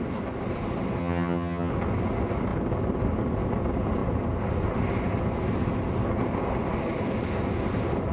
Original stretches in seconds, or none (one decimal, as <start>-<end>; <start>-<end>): 0.0-1.0; 1.7-8.1

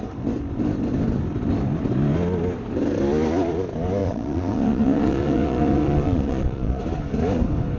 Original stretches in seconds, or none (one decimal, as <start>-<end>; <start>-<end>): 0.0-4.0; 6.8-7.8

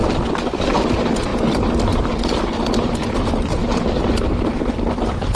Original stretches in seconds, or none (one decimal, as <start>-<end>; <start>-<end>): 0.0-5.4

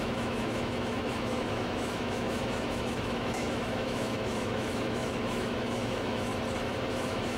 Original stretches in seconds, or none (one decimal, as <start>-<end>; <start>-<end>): 6.3-6.9

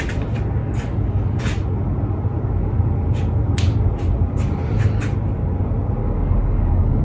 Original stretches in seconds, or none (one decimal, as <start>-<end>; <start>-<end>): 0.0-0.6; 1.4-6.0

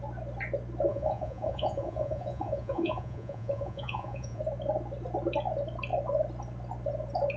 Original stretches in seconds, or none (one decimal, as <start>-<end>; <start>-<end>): 0.0-0.9; 4.4-7.4

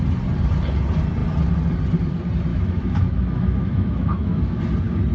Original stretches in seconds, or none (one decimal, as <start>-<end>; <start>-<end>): 0.0-2.5; 4.6-5.1